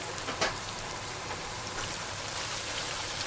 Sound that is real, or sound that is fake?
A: fake